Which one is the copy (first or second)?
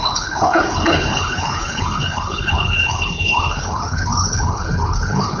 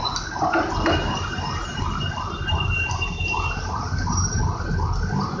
first